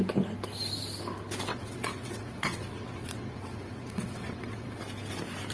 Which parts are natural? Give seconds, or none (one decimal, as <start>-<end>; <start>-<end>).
0.0-1.5; 4.8-5.5